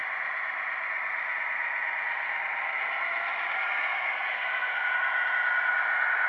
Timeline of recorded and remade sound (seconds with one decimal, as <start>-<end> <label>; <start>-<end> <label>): 0.0-4.3 recorded; 4.3-4.9 remade; 4.9-6.3 recorded